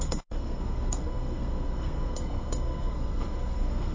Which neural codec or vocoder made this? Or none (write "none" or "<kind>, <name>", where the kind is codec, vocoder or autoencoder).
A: codec, SNAC